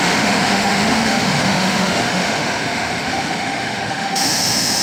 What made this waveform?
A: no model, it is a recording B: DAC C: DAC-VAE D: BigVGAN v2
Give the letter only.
C